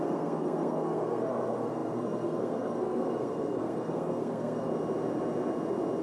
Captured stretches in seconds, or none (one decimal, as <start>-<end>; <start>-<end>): 4.7-6.0

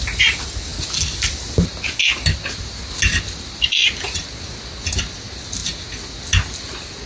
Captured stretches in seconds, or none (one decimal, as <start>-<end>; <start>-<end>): 0.0-7.1

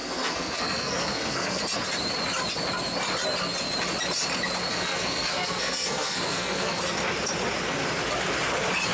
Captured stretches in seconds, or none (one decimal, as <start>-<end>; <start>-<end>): 1.6-4.7; 6.8-8.9

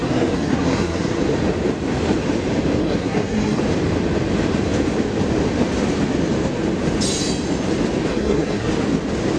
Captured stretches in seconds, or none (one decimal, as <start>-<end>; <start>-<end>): 1.2-2.8; 3.6-8.1; 8.7-9.4

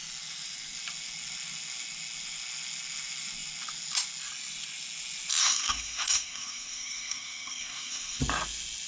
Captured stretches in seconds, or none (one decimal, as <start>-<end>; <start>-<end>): 0.0-5.4; 8.2-8.9

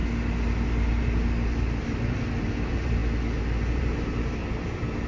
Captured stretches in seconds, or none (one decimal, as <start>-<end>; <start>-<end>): 0.0-2.4; 3.0-3.7; 4.4-5.1

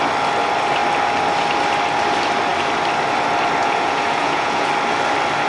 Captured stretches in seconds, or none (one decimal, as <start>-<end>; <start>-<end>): 0.0-3.6; 4.7-5.5

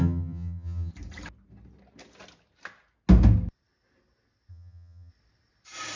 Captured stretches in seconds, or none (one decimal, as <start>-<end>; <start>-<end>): 0.9-4.5; 5.1-6.0